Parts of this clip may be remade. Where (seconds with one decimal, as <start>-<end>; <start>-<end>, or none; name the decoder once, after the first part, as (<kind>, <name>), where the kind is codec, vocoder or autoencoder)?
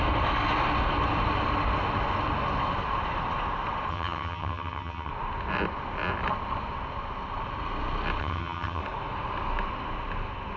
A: 3.9-5.1 (vocoder, HiFi-GAN); 8.2-8.8